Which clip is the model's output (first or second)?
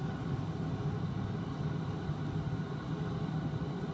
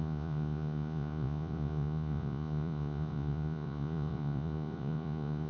second